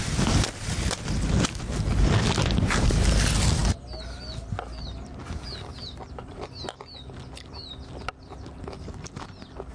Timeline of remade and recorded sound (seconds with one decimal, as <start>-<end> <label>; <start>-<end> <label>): 0.0-9.7 recorded